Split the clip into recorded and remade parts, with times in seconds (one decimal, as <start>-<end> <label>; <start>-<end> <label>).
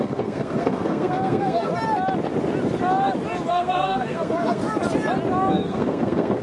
0.0-1.7 remade; 1.7-3.5 recorded; 3.5-4.6 remade; 4.6-5.5 recorded; 5.5-6.4 remade